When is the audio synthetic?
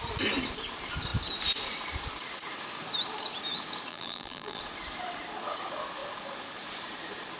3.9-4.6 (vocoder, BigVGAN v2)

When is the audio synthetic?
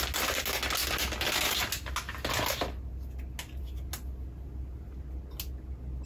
none